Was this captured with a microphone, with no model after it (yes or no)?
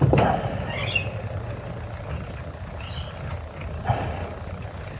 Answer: yes